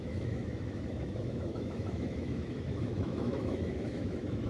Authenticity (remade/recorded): remade